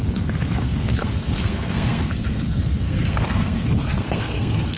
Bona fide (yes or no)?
no